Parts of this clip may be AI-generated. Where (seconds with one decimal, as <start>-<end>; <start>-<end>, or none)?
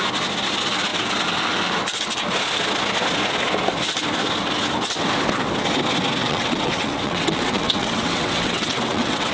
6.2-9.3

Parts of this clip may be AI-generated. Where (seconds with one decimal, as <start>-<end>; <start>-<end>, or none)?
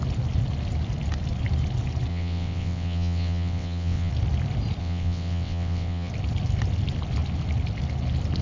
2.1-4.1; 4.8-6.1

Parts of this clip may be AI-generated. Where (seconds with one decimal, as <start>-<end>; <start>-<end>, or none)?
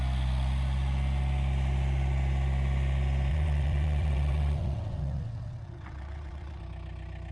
3.3-6.6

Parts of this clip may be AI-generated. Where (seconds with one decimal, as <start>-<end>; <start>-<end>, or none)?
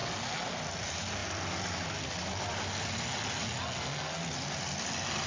none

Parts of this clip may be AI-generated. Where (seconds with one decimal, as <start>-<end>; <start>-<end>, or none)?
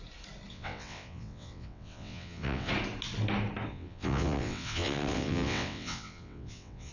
0.5-2.7; 3.7-6.9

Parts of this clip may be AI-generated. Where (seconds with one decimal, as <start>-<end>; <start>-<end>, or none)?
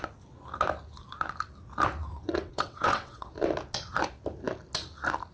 2.1-3.3